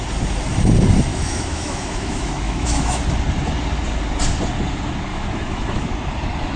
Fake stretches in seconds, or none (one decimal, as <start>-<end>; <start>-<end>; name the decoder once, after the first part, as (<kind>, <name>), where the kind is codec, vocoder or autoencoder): 1.1-3.0 (autoencoder, DAC-VAE); 5.1-5.9